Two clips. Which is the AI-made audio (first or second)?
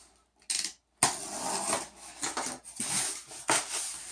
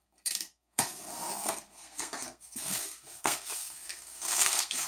second